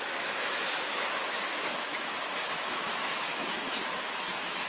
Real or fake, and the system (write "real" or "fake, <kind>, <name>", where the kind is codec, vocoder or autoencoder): fake, autoencoder, DAC-VAE